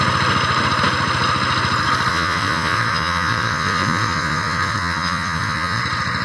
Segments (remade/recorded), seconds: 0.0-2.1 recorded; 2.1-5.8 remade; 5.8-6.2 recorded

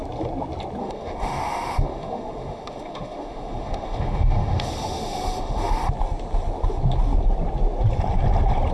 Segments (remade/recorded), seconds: 0.0-0.8 recorded; 0.8-5.9 remade; 5.9-8.7 recorded